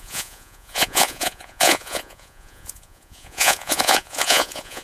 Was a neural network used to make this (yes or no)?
yes